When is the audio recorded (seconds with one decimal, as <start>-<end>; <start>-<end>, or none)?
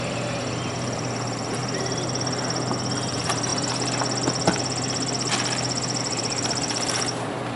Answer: 1.6-3.1; 3.5-6.0